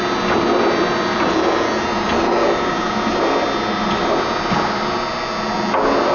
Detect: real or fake real